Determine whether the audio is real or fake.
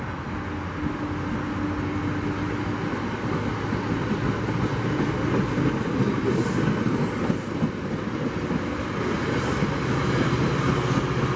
real